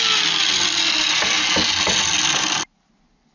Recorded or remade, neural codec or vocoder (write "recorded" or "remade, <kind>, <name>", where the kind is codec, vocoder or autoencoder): recorded